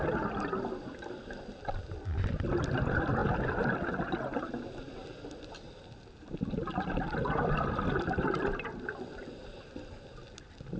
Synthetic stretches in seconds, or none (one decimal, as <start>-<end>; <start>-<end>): none